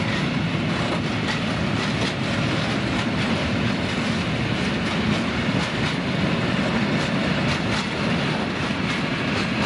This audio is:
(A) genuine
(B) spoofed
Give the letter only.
A